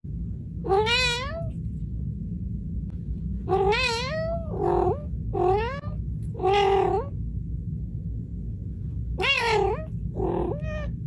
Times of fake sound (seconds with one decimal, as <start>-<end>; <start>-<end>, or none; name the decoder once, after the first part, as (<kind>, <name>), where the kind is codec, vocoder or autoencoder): none